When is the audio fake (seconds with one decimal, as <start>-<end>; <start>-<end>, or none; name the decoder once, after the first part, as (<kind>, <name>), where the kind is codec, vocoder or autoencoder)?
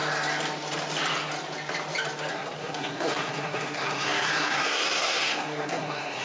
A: 2.3-6.2 (codec, SNAC)